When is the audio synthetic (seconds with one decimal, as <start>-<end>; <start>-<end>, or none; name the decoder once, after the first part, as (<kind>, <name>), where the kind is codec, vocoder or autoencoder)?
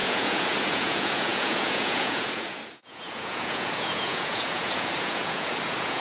0.0-6.0 (vocoder, Vocos)